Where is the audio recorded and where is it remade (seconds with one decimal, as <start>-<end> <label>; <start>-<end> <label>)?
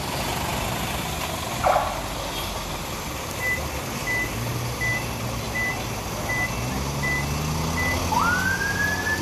0.0-9.2 recorded